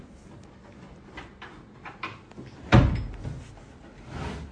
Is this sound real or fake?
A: real